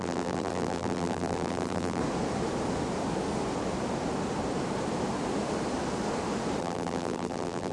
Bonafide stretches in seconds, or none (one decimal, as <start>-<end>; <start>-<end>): 2.0-6.6